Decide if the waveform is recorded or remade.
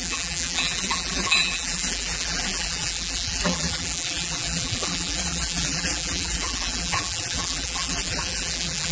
remade